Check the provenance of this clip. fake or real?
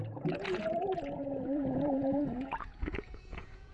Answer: fake